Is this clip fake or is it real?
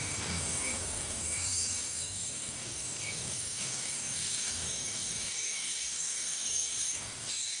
fake